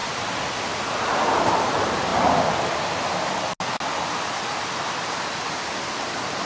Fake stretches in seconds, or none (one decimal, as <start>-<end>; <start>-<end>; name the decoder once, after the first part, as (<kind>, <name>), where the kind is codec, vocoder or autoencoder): none